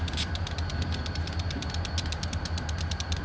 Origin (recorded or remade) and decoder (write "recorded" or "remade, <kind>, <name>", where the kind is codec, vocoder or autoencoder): recorded